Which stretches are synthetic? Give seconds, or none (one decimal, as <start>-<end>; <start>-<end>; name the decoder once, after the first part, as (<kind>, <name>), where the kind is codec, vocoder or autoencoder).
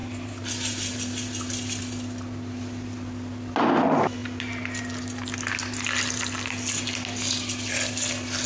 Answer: none